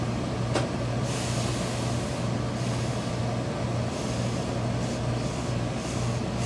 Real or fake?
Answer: real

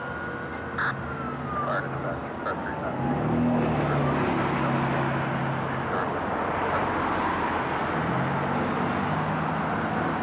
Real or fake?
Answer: real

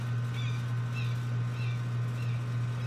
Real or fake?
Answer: real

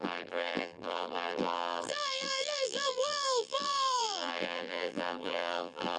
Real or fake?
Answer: fake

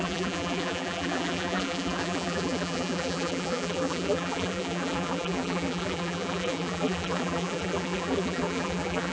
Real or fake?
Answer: fake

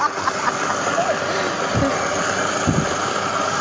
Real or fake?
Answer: real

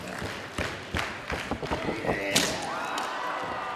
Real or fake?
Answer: real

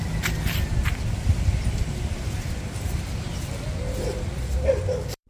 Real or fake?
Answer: fake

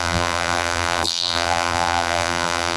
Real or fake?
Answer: fake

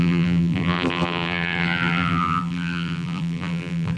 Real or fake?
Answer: fake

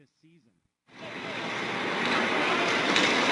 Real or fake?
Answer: fake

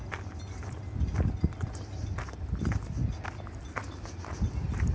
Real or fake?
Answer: real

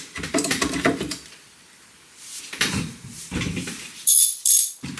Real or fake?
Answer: fake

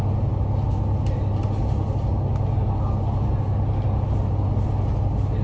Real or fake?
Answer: real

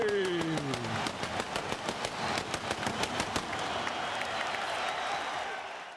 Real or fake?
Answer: fake